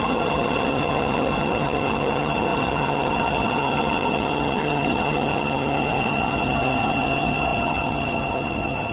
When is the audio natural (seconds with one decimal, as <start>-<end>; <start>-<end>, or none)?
none